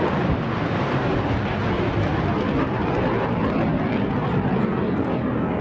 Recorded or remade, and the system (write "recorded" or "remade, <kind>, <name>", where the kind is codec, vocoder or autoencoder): recorded